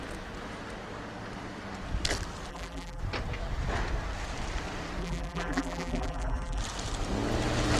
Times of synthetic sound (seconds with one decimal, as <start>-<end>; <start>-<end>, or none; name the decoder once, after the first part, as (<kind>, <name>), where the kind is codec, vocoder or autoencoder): 2.5-3.0 (vocoder, BigVGAN v2); 5.0-6.6